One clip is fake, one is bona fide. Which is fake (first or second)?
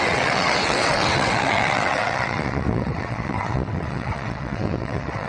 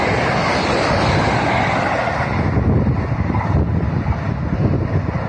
first